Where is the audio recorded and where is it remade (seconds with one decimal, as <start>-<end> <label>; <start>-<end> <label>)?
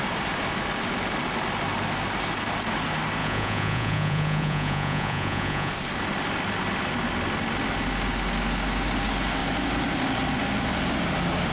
0.0-3.2 recorded; 3.2-5.7 remade; 5.7-11.5 recorded